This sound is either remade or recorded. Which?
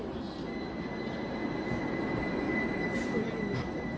recorded